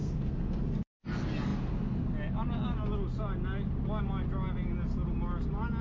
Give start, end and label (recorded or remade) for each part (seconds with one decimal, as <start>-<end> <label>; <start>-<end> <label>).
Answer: 0.0-0.6 remade; 0.6-5.8 recorded